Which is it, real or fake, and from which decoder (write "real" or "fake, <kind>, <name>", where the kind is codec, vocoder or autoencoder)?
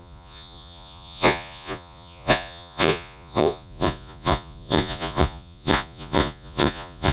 fake, vocoder, Vocos